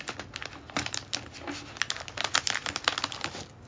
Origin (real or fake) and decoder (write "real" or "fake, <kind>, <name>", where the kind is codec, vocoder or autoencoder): real